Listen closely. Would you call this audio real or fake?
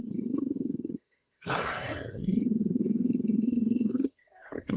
fake